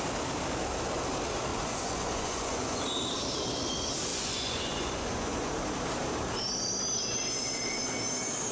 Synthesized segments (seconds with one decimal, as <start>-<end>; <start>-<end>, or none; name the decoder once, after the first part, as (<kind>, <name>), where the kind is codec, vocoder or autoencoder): 1.5-2.8 (vocoder, Vocos); 4.1-5.5